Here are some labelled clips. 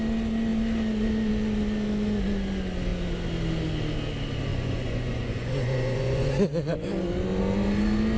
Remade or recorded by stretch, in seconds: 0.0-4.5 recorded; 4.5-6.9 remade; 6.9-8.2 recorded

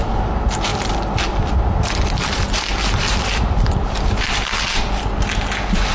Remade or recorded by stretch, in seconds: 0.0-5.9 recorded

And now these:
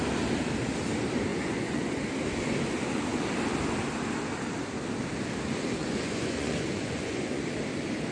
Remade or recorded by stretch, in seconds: 0.0-1.3 recorded; 1.3-2.0 remade; 2.0-5.8 recorded; 5.8-7.4 remade; 7.4-8.1 recorded

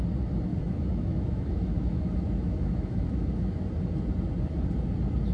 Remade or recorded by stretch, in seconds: 0.0-0.5 recorded; 0.5-3.7 remade; 3.7-5.3 recorded